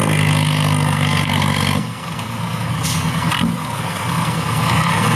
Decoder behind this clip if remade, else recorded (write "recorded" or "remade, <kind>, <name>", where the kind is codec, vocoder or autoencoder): remade, codec, SNAC